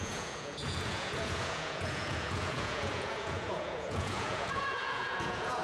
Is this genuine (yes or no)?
no